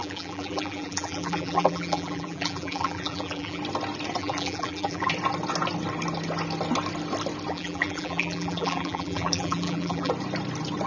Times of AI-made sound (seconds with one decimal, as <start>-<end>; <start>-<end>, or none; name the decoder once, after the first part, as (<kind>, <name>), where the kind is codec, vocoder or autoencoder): 0.0-3.6 (vocoder, BigVGAN v2); 4.2-5.1; 7.5-10.1